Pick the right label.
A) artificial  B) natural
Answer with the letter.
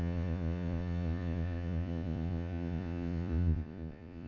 A